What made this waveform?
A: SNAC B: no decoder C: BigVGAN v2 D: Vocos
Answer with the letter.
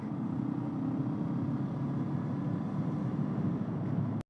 B